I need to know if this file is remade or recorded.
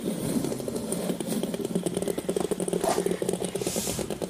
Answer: recorded